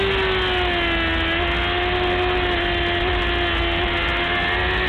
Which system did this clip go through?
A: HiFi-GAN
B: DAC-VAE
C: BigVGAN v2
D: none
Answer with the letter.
D